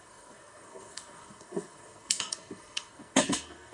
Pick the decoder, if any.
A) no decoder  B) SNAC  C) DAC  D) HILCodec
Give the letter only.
B